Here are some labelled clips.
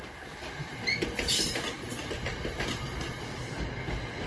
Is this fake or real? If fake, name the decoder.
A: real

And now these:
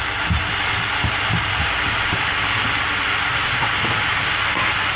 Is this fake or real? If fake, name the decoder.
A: real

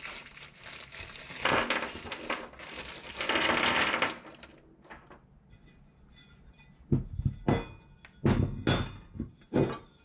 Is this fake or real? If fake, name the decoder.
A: real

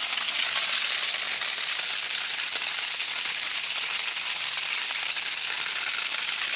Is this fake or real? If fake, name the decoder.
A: real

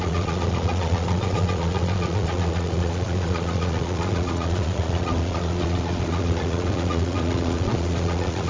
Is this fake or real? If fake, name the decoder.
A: fake, vocoder, Vocos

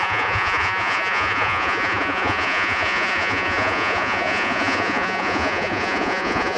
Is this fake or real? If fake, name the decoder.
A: fake, vocoder, Vocos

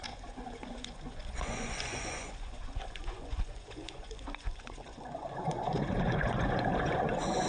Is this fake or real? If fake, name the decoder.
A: fake, vocoder, Vocos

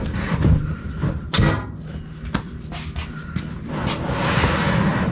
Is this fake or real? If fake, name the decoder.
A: real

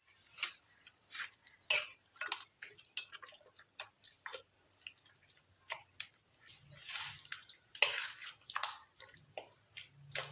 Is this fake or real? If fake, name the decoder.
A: real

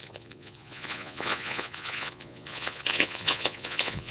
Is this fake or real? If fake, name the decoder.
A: fake, vocoder, Vocos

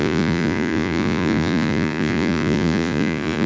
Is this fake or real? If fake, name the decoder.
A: fake, vocoder, Vocos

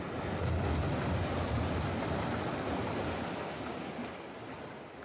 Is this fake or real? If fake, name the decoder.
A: real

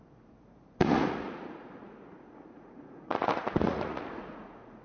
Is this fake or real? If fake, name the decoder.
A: fake, vocoder, Vocos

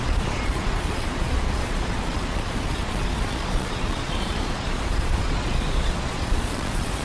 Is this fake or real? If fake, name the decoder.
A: fake, vocoder, Vocos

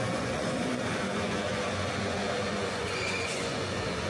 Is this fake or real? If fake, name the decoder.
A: fake, vocoder, Vocos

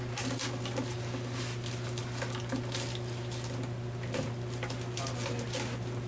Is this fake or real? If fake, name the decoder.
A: real